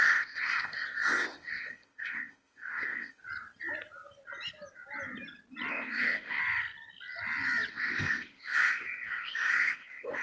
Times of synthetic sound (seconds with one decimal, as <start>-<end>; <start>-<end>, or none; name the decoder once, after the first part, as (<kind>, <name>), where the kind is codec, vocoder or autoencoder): 0.0-3.2 (codec, ZipCodec); 5.7-6.4; 7.7-10.2